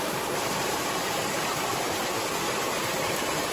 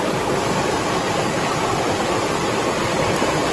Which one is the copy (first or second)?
first